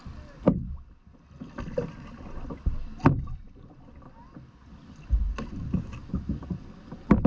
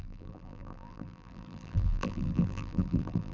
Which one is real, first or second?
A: first